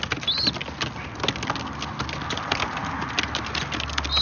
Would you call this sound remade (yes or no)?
no